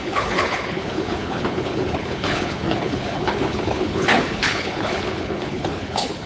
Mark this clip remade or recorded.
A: remade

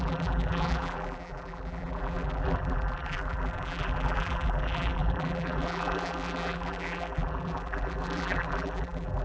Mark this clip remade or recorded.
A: remade